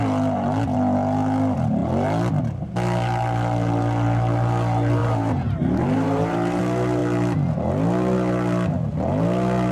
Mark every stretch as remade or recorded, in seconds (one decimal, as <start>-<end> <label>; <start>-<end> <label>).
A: 0.0-5.0 recorded; 5.0-6.6 remade; 6.6-9.7 recorded